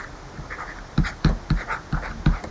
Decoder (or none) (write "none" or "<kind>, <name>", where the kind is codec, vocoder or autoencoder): none